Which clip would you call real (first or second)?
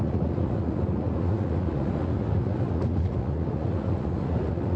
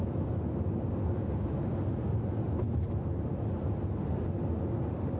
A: second